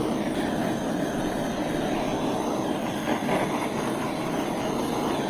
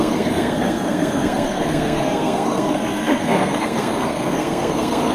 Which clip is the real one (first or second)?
first